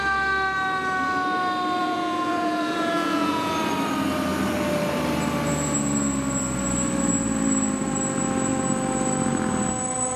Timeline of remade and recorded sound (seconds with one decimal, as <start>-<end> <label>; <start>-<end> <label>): 0.0-1.8 recorded; 1.8-3.5 remade; 3.5-10.2 recorded